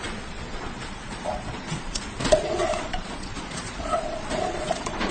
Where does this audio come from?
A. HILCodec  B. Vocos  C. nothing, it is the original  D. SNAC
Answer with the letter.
B